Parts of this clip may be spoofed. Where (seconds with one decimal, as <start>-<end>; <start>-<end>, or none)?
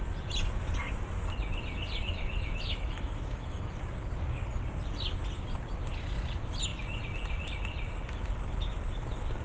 2.0-3.7